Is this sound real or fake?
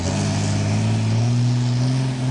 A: real